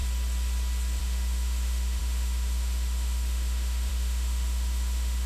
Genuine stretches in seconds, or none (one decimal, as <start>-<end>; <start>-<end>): 0.0-1.0